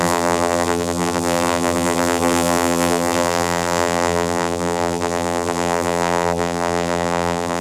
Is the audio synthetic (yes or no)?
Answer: yes